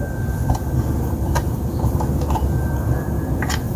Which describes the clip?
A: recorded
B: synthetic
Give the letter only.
A